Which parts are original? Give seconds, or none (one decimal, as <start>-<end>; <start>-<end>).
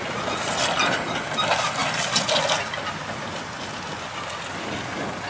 0.0-5.3